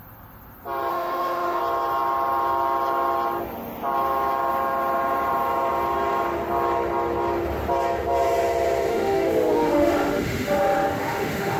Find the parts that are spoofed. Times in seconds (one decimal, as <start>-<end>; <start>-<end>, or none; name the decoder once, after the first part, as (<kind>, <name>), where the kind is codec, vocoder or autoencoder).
0.9-1.6 (autoencoder, DAC-VAE); 8.9-11.6